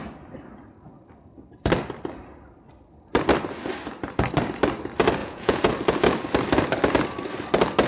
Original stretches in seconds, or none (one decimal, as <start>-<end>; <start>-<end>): 0.0-5.2; 5.7-7.9